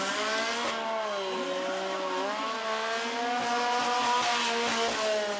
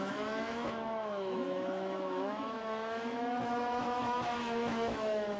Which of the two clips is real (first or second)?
first